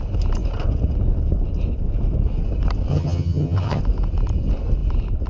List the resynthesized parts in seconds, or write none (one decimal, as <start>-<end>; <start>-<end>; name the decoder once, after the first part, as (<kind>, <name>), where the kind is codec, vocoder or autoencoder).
2.9-3.8 (vocoder, HiFi-GAN)